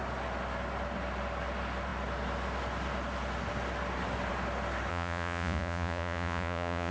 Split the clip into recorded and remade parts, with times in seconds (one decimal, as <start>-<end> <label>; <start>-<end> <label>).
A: 0.0-4.9 recorded; 4.9-6.9 remade